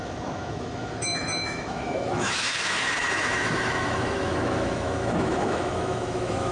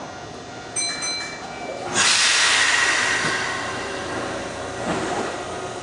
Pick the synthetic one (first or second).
first